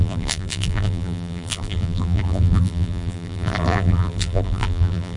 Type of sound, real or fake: fake